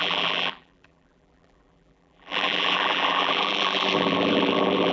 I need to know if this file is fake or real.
fake